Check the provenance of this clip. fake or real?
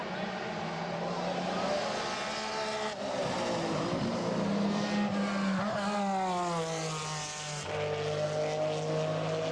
real